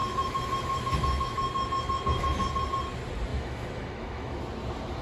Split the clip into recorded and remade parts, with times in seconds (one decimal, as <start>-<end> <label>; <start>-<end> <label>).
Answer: 0.0-2.4 remade; 2.4-3.3 recorded; 3.3-4.4 remade; 4.4-5.0 recorded